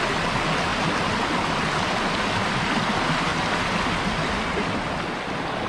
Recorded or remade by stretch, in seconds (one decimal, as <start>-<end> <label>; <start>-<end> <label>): 0.0-5.7 recorded